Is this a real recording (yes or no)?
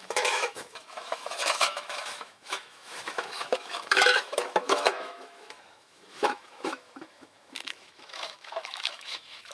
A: no